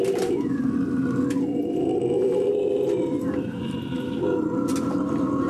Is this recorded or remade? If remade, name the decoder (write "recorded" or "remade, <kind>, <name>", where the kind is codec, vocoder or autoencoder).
recorded